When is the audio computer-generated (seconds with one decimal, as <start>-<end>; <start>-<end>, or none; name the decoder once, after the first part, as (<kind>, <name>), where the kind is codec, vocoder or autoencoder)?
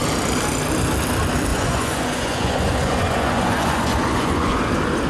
1.5-4.6 (vocoder, Vocos)